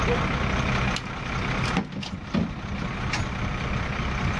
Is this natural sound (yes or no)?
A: yes